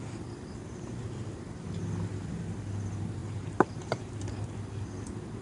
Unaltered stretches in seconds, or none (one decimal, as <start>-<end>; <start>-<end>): 0.0-0.6; 1.7-3.2; 4.1-5.4